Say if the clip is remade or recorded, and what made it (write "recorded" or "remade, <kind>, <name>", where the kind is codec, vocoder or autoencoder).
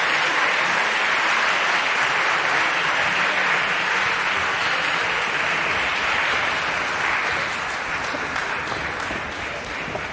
recorded